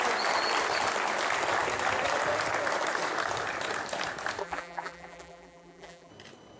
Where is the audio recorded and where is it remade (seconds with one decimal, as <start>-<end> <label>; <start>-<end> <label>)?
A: 0.0-4.4 recorded; 4.4-6.1 remade; 6.1-6.6 recorded